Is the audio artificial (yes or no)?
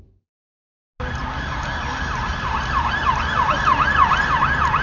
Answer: no